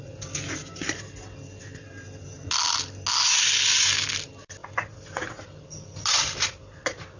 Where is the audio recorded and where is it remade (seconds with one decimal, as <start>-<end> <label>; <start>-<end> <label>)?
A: 0.0-7.2 recorded